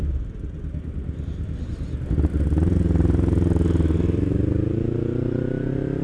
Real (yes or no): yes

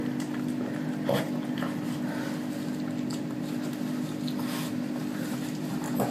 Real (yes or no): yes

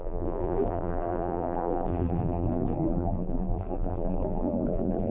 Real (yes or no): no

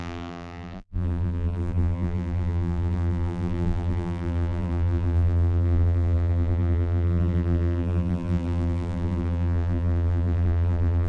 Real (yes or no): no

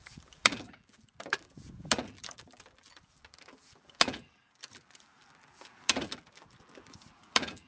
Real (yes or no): no